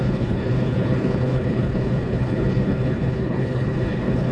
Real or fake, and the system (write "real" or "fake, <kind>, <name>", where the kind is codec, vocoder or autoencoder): fake, codec, HILCodec